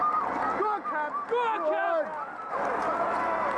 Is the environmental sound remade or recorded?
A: recorded